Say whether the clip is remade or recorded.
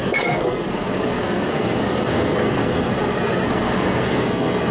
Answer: remade